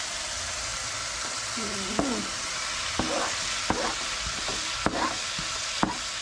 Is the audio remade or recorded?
recorded